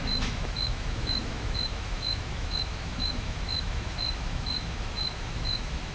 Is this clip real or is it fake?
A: fake